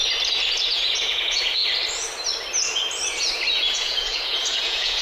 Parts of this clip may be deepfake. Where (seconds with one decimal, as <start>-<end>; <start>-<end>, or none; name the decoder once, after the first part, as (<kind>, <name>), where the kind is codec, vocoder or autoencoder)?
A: 0.6-1.6 (vocoder, Vocos); 3.5-5.0